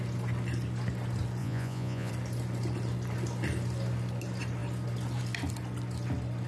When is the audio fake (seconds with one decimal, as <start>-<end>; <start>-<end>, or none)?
1.4-2.1